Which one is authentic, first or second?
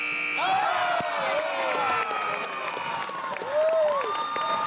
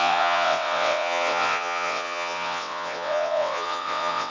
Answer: first